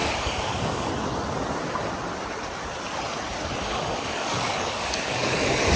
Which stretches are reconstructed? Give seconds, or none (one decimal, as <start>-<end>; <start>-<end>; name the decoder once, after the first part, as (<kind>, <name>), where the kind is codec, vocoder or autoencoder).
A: 0.0-0.9 (codec, DAC); 3.6-5.8